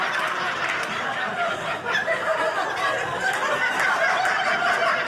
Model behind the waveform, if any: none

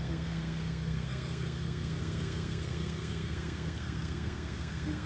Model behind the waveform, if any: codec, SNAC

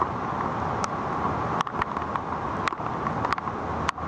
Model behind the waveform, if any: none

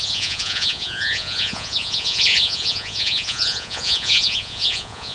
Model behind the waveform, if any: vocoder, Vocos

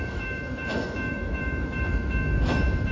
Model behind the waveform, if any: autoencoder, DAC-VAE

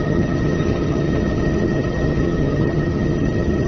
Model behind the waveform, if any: vocoder, HiFi-GAN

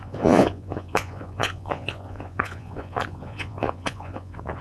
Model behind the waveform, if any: vocoder, Vocos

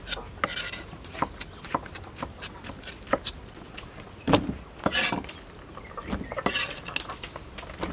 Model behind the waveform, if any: none